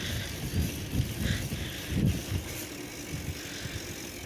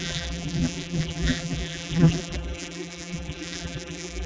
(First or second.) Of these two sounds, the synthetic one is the second